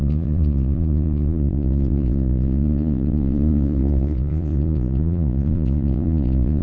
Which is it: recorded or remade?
remade